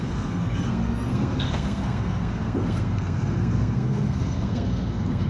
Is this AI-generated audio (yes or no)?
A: yes